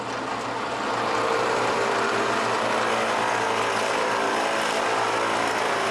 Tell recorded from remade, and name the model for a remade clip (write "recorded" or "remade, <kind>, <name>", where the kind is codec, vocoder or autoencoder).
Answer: recorded